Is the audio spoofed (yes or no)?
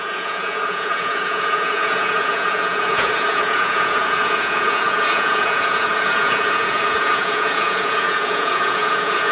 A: yes